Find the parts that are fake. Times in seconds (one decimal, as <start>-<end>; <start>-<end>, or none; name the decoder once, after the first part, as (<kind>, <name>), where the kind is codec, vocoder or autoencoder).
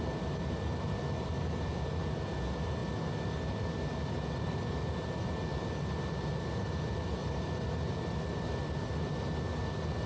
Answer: 7.2-9.0 (vocoder, BigVGAN v2)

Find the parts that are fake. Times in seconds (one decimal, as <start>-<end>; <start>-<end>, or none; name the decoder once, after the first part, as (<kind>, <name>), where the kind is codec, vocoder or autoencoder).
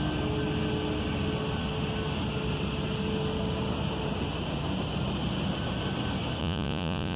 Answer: 6.4-7.2 (vocoder, Vocos)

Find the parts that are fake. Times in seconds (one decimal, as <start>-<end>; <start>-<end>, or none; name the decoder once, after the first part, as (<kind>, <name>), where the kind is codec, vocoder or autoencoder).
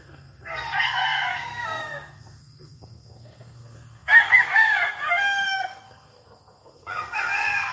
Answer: 0.0-7.7 (codec, SNAC)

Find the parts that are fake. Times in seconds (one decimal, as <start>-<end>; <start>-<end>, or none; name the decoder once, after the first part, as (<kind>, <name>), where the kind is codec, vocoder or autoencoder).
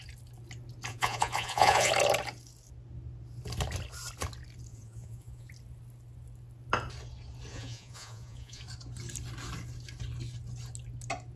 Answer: 0.9-1.9 (vocoder, Vocos); 4.7-5.5; 7.5-8.6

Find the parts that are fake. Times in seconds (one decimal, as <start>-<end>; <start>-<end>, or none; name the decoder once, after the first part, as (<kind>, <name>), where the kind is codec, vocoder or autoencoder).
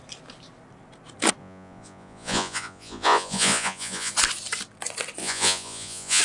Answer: 1.4-4.1 (vocoder, Vocos); 5.2-6.2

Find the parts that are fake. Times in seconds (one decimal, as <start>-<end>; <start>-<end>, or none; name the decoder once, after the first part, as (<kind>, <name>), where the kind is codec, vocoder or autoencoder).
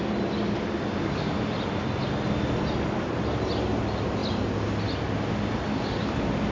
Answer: none